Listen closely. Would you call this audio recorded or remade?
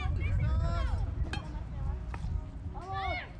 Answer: recorded